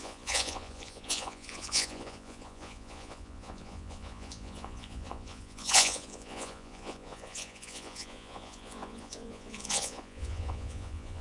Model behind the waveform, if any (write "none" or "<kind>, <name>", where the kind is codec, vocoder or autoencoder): vocoder, Vocos